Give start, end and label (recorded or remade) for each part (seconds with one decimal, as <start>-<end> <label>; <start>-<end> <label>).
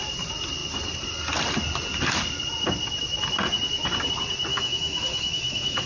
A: 0.0-4.5 recorded; 4.5-5.9 remade